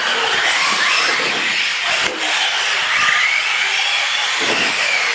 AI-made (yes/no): no